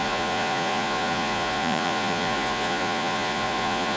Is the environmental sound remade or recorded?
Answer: remade